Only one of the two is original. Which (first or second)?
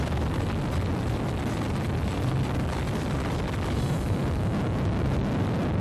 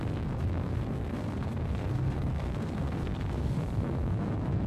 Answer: first